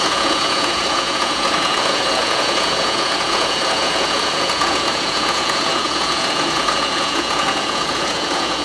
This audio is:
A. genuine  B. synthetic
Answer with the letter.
B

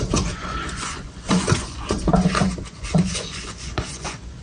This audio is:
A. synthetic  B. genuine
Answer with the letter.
A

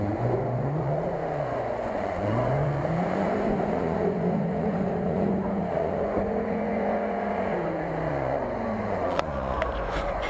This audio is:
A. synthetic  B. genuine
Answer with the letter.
A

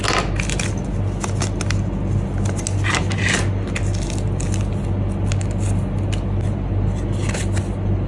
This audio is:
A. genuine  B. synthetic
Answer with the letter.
A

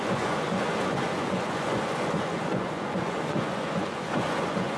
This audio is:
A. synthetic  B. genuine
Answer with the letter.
A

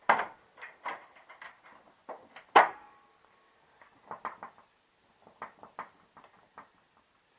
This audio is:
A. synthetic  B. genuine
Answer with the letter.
B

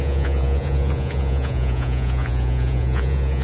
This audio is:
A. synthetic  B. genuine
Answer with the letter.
A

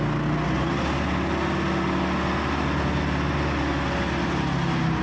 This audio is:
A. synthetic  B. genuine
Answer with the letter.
B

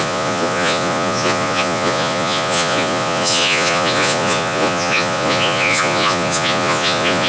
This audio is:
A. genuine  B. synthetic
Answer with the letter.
B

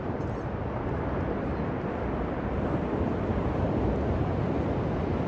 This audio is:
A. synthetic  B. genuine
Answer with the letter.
B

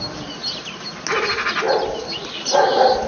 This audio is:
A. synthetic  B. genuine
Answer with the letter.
B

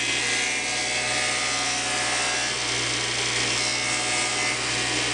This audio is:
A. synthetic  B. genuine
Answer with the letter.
B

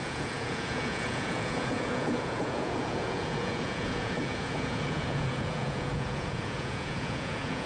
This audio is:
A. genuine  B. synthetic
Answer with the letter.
B